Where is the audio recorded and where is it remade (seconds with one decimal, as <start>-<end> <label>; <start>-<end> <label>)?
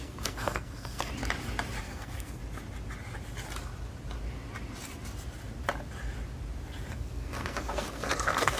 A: 0.0-1.1 remade; 1.1-1.8 recorded; 1.8-2.4 remade; 2.4-6.9 recorded; 6.9-8.6 remade